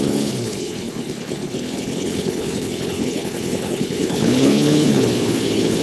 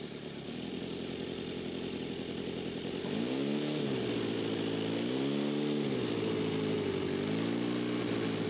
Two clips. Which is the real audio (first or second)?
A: second